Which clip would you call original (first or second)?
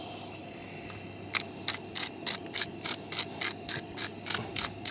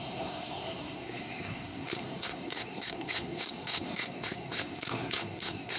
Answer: first